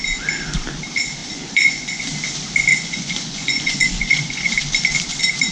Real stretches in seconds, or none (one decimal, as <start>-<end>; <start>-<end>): 0.0-1.2; 2.0-2.7; 4.5-5.5